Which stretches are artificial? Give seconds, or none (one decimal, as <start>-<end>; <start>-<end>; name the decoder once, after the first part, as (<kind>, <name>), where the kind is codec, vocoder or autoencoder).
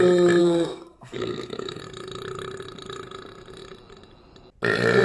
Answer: 0.4-1.8 (codec, SNAC)